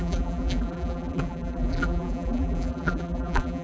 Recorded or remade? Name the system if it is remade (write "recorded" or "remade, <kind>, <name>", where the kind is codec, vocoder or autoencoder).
remade, vocoder, BigVGAN v2